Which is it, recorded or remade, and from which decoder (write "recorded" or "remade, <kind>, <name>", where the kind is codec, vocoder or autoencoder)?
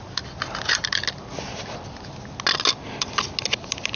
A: recorded